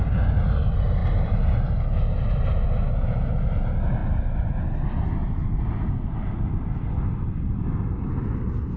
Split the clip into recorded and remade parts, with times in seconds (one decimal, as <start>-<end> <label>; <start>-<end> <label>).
0.0-1.0 recorded; 1.0-1.7 remade; 1.7-4.0 recorded; 4.0-4.5 remade; 4.5-5.2 recorded; 5.2-6.5 remade; 6.5-8.8 recorded